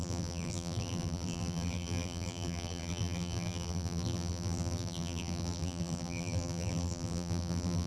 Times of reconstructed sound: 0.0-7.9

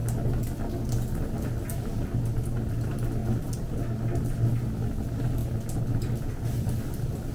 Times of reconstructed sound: none